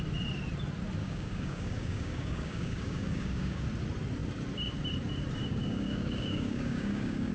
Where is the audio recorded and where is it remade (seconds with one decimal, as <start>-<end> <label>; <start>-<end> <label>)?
0.0-1.0 recorded; 1.0-3.6 remade; 3.6-5.4 recorded; 5.4-7.3 remade